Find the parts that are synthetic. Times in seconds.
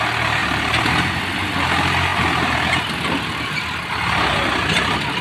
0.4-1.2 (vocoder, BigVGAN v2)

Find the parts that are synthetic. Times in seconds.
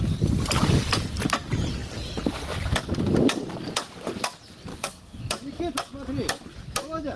4.7-5.2 (codec, DAC)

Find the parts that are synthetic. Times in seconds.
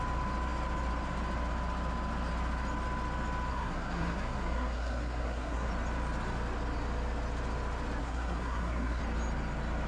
3.5-5.7 (codec, SNAC); 8.0-9.0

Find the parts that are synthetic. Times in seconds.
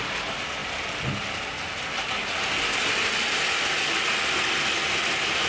none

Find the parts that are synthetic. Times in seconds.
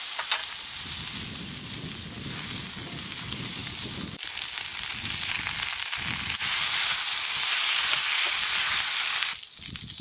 none